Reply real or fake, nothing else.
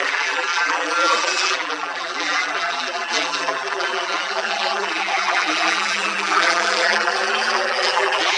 fake